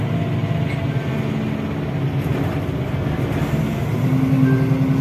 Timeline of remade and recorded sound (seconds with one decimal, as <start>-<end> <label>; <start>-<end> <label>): 0.0-5.0 recorded